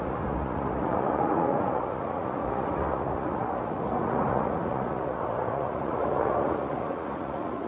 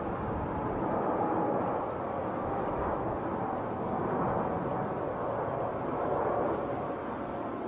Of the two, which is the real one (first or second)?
second